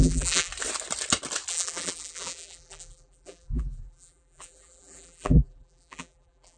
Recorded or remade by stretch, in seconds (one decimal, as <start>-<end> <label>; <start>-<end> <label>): 0.0-0.5 remade; 0.5-1.5 recorded; 1.5-6.6 remade